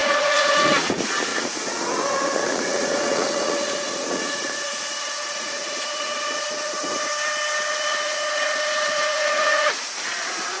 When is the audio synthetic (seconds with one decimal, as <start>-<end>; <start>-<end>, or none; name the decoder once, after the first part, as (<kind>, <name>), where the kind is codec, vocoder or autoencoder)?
0.0-7.1 (vocoder, Vocos); 7.7-10.6